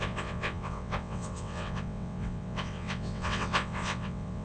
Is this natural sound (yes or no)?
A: no